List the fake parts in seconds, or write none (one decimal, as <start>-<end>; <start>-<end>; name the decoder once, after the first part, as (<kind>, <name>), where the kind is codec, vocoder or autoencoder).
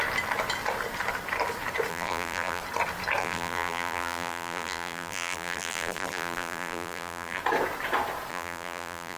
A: 1.9-2.6 (vocoder, BigVGAN v2); 3.2-7.4; 8.3-9.2